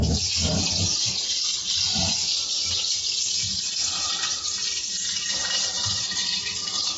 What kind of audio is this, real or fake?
real